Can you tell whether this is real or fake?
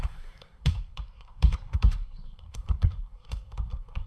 fake